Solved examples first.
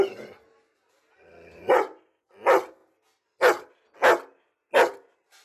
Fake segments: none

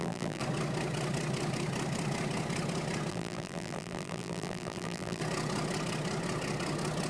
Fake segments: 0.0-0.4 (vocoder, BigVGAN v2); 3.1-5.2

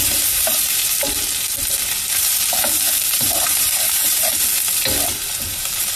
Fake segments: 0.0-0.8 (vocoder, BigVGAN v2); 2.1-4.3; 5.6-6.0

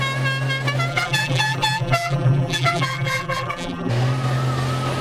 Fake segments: 0.9-3.9 (vocoder, BigVGAN v2)

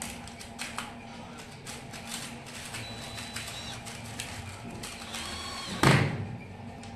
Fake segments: none

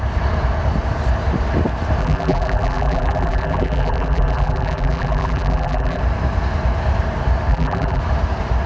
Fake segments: 2.0-6.0 (vocoder, BigVGAN v2); 7.5-8.0